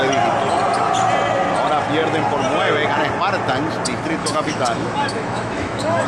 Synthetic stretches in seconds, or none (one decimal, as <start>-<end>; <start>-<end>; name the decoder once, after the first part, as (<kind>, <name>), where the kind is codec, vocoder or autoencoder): 4.2-6.1 (autoencoder, DAC-VAE)